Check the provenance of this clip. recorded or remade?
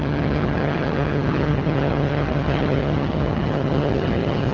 remade